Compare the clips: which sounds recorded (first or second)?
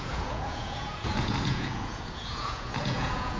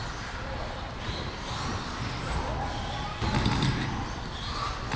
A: second